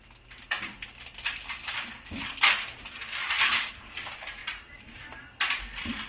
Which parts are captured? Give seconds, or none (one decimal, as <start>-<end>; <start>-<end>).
0.0-6.1